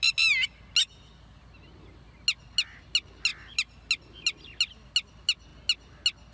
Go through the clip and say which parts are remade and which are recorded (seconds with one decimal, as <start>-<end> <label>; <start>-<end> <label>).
0.0-6.3 recorded